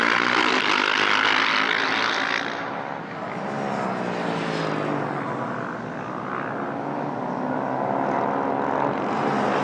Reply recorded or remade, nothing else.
recorded